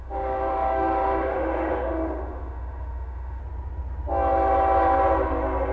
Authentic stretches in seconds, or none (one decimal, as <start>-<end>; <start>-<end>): 3.4-5.7